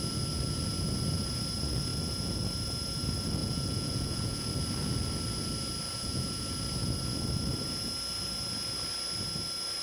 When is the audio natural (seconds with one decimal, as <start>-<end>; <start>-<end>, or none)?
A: 0.0-3.4; 4.5-5.9; 6.4-9.8